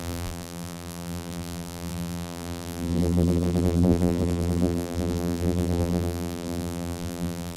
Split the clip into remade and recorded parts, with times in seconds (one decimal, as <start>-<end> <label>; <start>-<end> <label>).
0.0-7.6 remade